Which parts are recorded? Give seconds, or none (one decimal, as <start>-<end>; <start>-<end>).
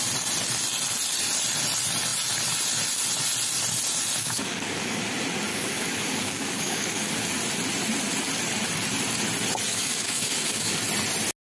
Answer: 0.0-4.2; 5.0-5.5; 7.3-9.7; 10.8-11.4